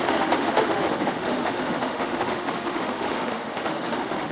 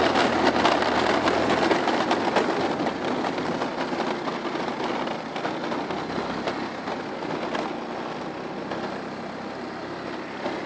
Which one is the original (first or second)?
second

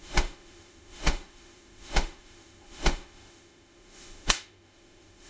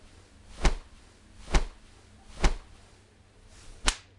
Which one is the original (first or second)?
second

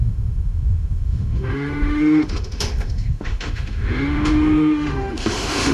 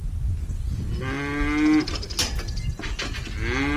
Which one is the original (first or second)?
second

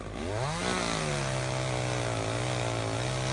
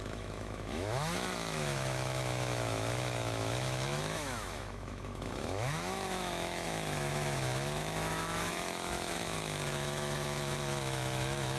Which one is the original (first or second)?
first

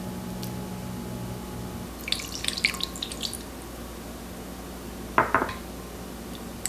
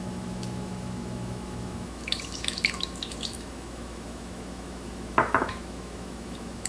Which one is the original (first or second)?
first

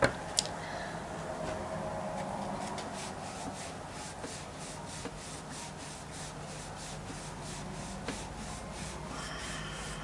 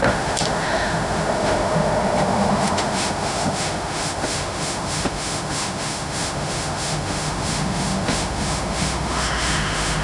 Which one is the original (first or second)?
first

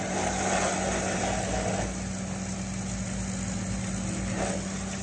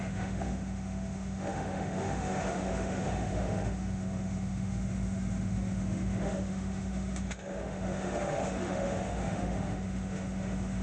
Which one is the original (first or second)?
first